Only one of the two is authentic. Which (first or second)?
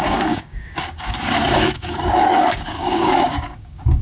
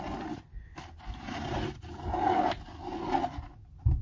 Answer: second